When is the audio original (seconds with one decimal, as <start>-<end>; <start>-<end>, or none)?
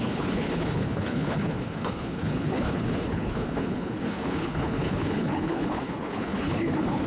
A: none